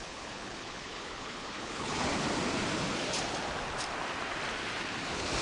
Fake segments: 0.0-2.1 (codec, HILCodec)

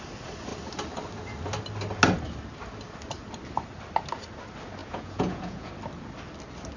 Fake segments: 4.8-5.7 (vocoder, Vocos)

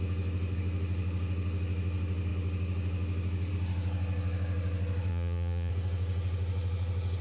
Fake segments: 5.1-5.7 (vocoder, Vocos)

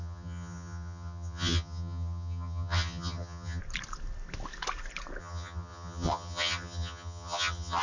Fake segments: 0.0-3.6 (vocoder, HiFi-GAN); 5.2-7.8

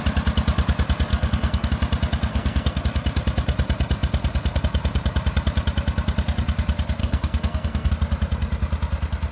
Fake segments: 1.1-1.7 (codec, SNAC); 2.3-2.8; 7.0-7.9

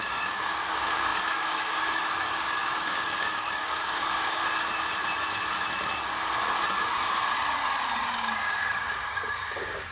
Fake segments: 0.0-4.4 (codec, DAC); 8.0-9.9